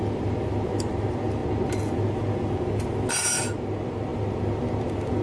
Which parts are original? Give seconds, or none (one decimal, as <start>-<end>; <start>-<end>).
0.0-5.2